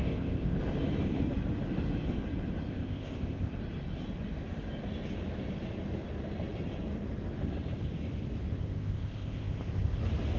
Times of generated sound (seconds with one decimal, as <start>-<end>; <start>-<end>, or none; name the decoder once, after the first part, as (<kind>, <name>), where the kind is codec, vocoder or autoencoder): 0.0-0.6 (codec, ZipCodec); 2.7-3.5; 8.6-10.0